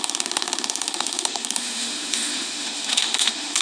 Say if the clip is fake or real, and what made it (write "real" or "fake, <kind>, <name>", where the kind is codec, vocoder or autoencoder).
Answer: fake, autoencoder, DAC-VAE